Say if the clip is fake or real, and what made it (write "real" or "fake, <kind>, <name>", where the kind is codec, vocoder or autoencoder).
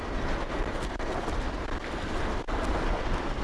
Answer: real